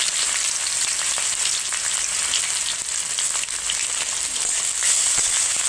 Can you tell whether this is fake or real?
real